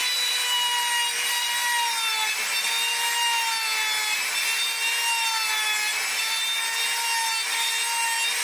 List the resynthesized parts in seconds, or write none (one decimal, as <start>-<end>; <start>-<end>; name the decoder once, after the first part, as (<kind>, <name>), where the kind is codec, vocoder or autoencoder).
none